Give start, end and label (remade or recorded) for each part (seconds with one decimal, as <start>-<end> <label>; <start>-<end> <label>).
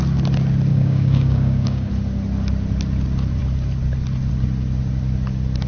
0.0-0.7 recorded; 0.7-1.9 remade; 1.9-5.7 recorded